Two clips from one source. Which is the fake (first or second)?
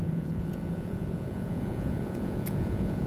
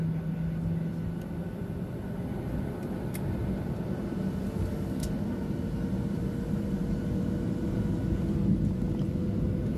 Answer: first